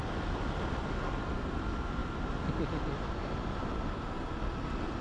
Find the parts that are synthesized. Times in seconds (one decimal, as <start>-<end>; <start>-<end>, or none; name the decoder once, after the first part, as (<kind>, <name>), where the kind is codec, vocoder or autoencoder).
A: none